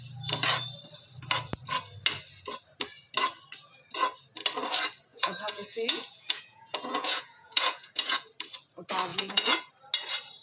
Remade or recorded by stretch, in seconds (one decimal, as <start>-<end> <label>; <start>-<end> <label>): 0.0-5.1 recorded; 5.1-8.3 remade; 8.3-9.1 recorded; 9.1-9.7 remade; 9.7-10.4 recorded